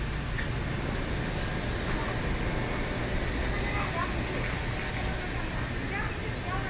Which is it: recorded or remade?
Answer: recorded